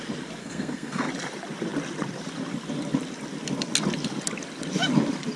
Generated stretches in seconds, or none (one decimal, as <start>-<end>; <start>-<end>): 0.4-1.1